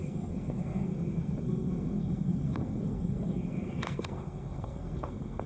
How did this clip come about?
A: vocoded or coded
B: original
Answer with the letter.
A